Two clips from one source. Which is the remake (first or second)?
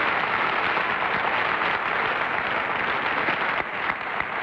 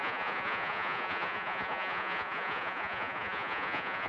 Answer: second